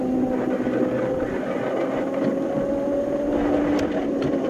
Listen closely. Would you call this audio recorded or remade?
recorded